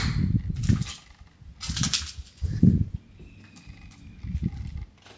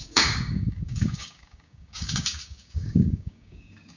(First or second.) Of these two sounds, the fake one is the second